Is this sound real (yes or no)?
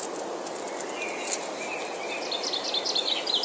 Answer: yes